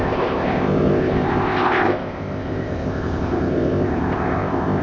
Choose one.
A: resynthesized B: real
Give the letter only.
A